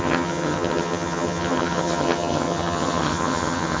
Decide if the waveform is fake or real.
fake